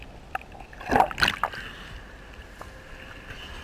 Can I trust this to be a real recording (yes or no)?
yes